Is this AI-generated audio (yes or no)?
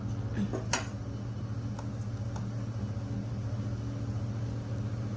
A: no